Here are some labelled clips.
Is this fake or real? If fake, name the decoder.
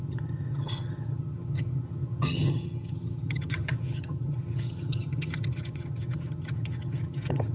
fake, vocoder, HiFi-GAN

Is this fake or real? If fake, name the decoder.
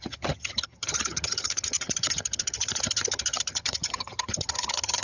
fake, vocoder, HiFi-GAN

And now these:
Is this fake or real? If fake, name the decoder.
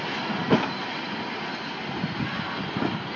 real